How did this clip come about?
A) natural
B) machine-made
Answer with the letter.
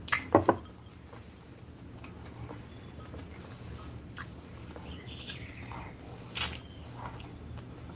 A